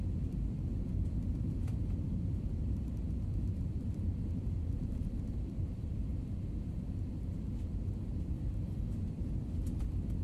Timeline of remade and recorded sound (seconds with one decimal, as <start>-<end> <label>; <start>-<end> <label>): 0.0-1.3 recorded; 1.3-6.1 remade; 6.1-10.2 recorded